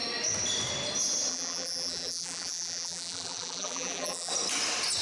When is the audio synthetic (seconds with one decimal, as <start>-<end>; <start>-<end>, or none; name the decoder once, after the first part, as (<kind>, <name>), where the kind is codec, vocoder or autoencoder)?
1.3-4.3 (vocoder, BigVGAN v2)